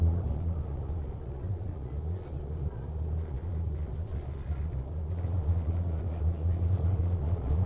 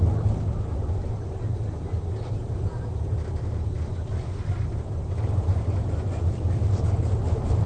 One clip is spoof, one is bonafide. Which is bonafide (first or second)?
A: second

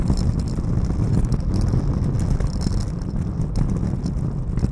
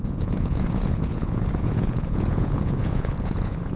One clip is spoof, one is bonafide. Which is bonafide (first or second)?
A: first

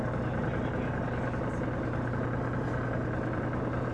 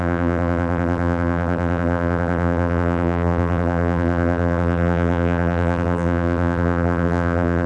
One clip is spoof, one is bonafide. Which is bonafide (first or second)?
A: first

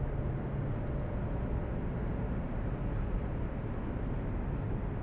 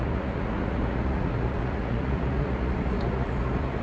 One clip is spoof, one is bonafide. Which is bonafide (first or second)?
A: first